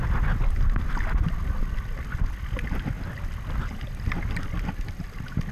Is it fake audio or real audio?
real